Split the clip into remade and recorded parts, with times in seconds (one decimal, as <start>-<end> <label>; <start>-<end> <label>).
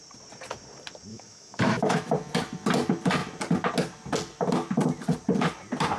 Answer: 0.0-1.1 recorded; 1.1-2.1 remade; 2.1-6.0 recorded